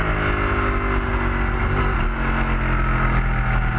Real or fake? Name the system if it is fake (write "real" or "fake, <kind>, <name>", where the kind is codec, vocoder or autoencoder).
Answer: real